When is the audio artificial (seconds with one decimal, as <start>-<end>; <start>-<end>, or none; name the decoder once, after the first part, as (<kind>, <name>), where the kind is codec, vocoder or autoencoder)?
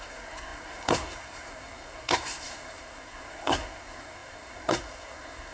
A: 0.0-5.5 (codec, SNAC)